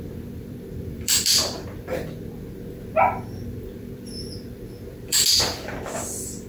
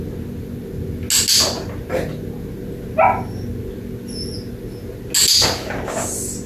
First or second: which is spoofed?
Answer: first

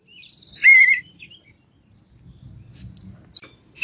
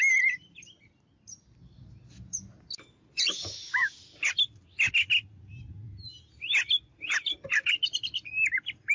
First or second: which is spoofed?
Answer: first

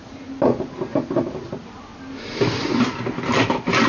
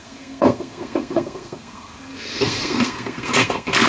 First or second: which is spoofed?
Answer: second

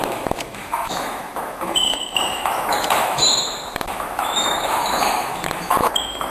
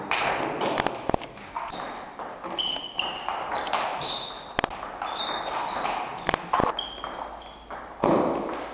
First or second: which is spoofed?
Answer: first